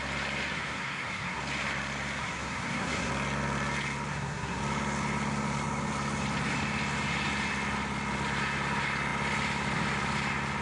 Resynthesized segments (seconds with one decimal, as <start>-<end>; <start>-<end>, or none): 0.5-1.4; 2.2-3.1; 4.1-4.6